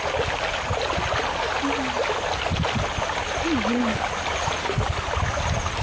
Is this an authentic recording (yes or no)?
yes